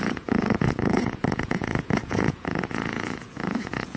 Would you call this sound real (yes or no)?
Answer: no